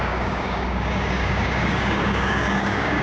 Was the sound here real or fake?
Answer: fake